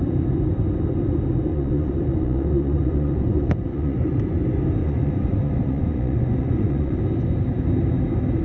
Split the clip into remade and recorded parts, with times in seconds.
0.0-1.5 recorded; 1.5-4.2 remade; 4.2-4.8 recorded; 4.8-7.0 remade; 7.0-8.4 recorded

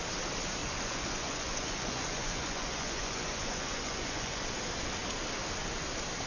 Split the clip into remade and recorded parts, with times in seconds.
0.0-0.6 recorded; 0.6-4.4 remade; 4.4-6.3 recorded

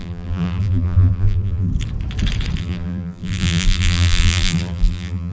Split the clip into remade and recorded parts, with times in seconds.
0.0-1.7 remade; 1.7-2.6 recorded; 2.6-5.3 remade

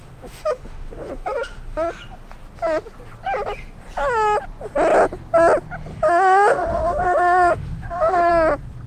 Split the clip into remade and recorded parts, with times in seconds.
0.0-1.9 remade; 1.9-5.9 recorded; 5.9-8.3 remade; 8.3-8.9 recorded

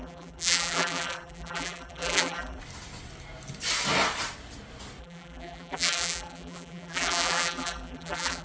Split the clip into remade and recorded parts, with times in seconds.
0.0-2.6 remade; 2.6-5.0 recorded; 5.0-8.4 remade